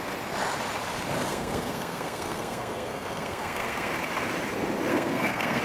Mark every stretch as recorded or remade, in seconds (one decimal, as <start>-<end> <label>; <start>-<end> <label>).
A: 0.0-1.3 recorded; 1.3-3.9 remade; 3.9-4.9 recorded; 4.9-5.6 remade